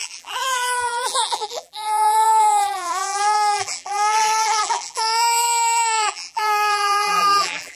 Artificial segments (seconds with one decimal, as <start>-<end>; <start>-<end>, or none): 0.0-7.7